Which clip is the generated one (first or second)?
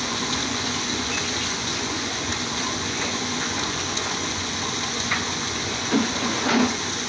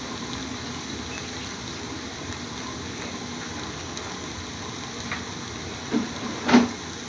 first